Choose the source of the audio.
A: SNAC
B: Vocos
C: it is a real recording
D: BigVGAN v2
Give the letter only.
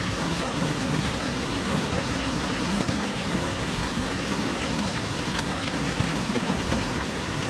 A